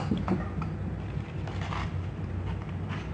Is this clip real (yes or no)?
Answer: yes